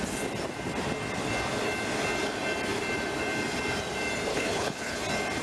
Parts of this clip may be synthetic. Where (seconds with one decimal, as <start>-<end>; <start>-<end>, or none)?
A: 4.3-5.0